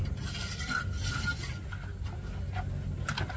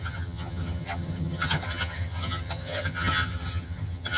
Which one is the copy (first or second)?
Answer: second